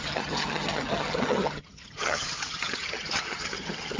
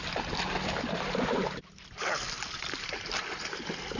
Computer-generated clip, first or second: first